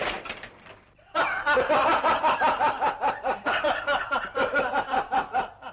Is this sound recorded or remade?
remade